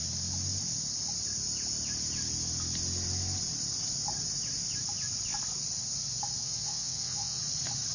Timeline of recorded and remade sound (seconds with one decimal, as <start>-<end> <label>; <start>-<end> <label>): 0.0-6.4 recorded; 6.4-7.4 remade; 7.4-7.9 recorded